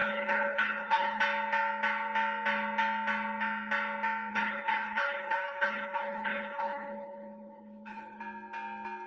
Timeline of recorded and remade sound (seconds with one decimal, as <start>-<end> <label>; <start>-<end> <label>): 0.0-1.2 remade; 1.2-4.3 recorded; 4.3-8.2 remade; 8.2-9.1 recorded